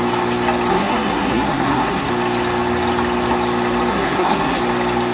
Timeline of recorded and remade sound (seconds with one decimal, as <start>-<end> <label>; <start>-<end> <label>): 0.0-0.7 recorded; 0.7-2.1 remade; 2.1-3.9 recorded; 3.9-4.6 remade; 4.6-5.1 recorded